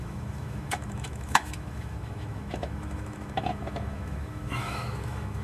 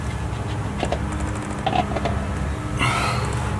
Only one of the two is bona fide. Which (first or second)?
second